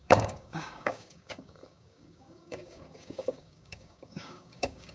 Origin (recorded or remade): remade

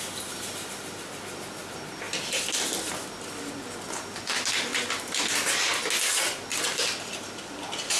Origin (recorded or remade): recorded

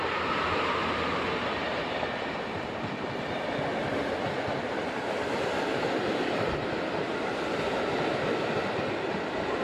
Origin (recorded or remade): recorded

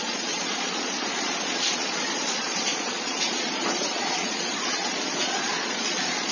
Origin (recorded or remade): remade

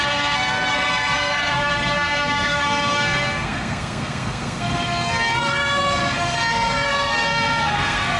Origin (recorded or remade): remade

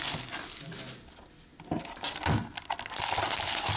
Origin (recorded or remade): recorded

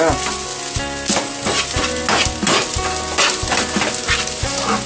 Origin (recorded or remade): recorded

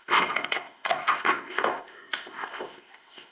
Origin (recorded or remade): remade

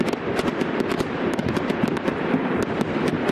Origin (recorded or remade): recorded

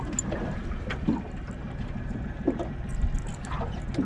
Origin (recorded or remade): recorded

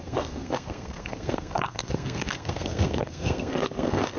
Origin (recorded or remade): remade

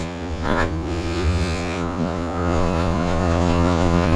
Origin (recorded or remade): remade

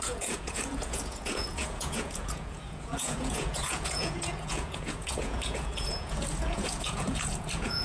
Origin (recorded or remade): remade